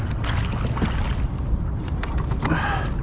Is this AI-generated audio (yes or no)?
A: no